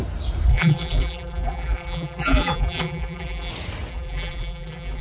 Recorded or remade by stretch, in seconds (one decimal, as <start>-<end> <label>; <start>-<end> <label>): 0.0-0.5 recorded; 0.5-3.5 remade; 3.5-3.9 recorded; 3.9-5.0 remade